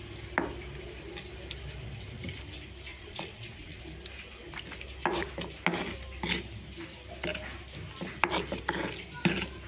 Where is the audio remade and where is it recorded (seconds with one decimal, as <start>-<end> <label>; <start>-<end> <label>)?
0.0-2.9 recorded; 2.9-3.8 remade; 3.8-9.7 recorded